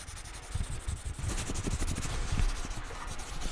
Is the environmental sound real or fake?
real